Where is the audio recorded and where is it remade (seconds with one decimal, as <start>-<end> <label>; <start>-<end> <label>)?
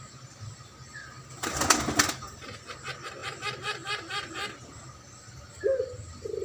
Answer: 0.0-3.2 recorded; 3.2-5.5 remade; 5.5-6.4 recorded